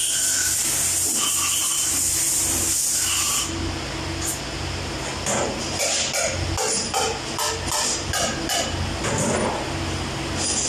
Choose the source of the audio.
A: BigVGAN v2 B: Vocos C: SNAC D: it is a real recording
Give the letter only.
D